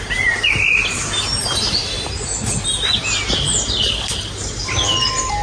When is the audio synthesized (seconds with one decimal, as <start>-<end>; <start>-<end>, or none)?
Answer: none